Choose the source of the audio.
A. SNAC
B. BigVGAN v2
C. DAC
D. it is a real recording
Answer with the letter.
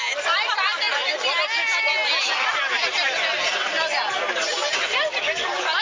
D